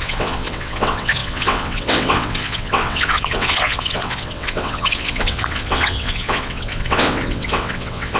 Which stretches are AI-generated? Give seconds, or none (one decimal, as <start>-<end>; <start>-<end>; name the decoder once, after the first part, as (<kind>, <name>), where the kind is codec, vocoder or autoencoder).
0.0-8.2 (vocoder, WaveNeXt)